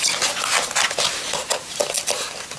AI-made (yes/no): no